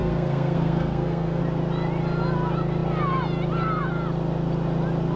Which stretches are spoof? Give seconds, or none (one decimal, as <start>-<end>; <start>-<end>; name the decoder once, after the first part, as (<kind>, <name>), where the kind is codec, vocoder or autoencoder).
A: 0.0-1.4 (codec, SNAC)